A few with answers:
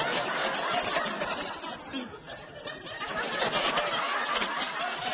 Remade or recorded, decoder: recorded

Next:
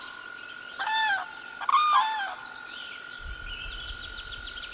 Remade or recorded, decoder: recorded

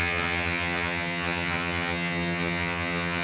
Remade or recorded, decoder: remade, vocoder, HiFi-GAN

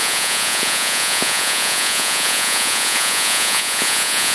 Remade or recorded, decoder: remade, vocoder, Vocos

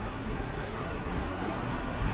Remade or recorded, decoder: remade, codec, SNAC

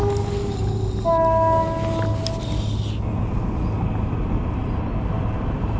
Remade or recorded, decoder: recorded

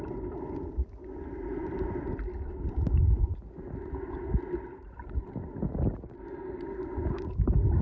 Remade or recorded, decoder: recorded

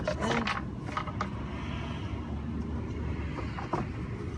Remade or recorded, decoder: recorded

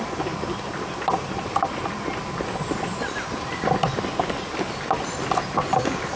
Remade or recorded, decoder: recorded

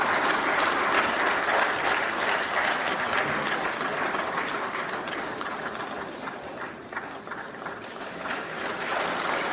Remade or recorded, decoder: recorded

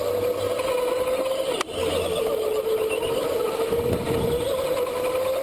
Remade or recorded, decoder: recorded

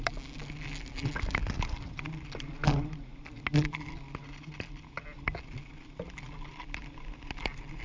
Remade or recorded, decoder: recorded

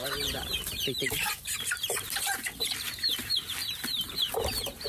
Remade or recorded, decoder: remade, vocoder, BigVGAN v2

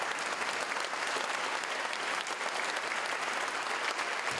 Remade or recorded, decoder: recorded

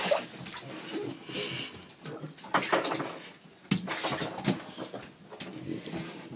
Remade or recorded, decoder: recorded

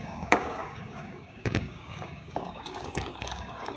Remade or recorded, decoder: remade, codec, DAC